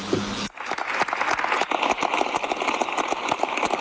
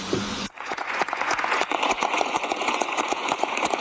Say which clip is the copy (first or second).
second